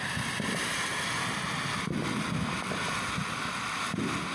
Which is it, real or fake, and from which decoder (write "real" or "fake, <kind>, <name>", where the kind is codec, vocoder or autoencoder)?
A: real